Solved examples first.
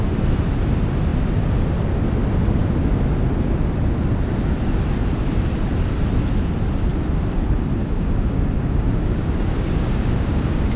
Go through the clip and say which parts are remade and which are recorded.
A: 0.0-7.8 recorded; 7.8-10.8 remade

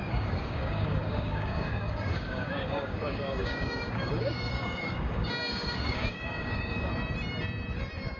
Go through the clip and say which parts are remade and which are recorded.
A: 0.0-6.9 remade; 6.9-8.2 recorded

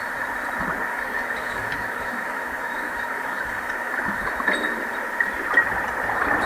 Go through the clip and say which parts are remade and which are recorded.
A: 0.0-0.9 recorded; 0.9-4.3 remade; 4.3-6.5 recorded

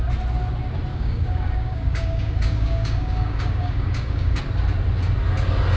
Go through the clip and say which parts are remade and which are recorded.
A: 0.0-0.9 recorded; 0.9-4.4 remade; 4.4-5.8 recorded

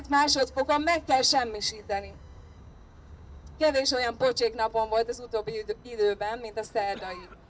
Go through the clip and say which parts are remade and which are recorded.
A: 0.0-0.4 recorded; 0.4-4.4 remade; 4.4-7.5 recorded